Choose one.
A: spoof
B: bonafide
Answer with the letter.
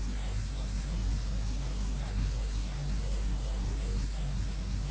A